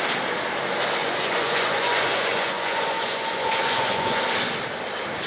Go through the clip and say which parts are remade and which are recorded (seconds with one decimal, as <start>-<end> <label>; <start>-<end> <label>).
0.0-1.0 recorded; 1.0-4.2 remade; 4.2-5.3 recorded